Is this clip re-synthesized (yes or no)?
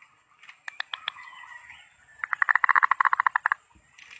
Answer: no